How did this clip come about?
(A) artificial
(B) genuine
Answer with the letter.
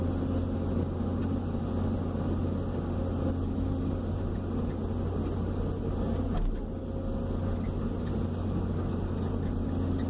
B